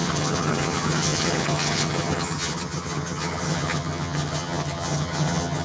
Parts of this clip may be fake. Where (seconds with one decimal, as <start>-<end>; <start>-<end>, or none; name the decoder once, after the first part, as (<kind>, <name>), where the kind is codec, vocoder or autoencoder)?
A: 0.0-5.6 (vocoder, HiFi-GAN)

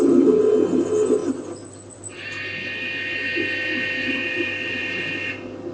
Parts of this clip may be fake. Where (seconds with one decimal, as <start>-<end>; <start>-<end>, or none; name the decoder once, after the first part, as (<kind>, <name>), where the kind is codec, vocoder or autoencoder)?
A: none